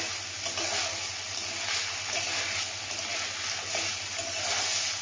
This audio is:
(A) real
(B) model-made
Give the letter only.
A